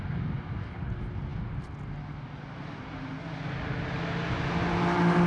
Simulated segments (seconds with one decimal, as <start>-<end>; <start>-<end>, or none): none